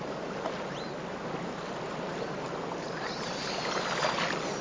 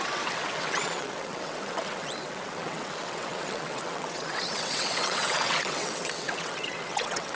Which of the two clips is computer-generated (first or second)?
second